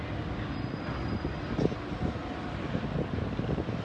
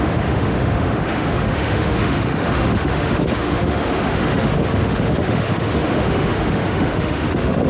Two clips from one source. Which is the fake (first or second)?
second